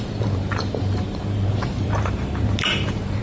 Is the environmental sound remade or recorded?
remade